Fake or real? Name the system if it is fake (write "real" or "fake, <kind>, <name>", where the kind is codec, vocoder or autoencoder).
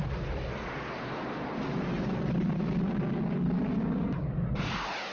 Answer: real